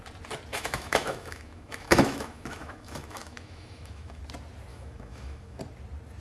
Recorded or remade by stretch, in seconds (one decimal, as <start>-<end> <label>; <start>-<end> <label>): 0.0-0.5 recorded; 0.5-4.2 remade; 4.2-4.7 recorded; 4.7-5.6 remade; 5.6-6.2 recorded